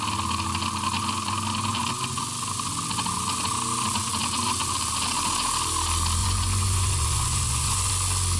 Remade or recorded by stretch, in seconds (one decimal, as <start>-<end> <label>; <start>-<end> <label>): 0.0-6.2 recorded; 6.2-7.9 remade; 7.9-8.4 recorded